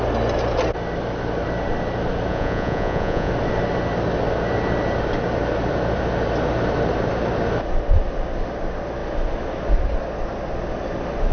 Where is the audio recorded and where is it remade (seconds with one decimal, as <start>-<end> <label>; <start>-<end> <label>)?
0.0-2.3 recorded; 2.3-3.3 remade; 3.3-11.3 recorded